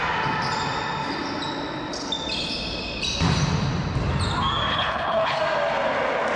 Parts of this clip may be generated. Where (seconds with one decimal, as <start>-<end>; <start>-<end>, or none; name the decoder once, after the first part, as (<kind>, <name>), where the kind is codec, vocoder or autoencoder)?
4.7-5.4 (codec, HILCodec)